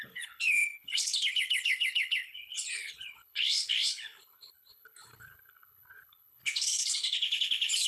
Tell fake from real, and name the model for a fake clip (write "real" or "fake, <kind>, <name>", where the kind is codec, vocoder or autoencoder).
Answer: fake, codec, HILCodec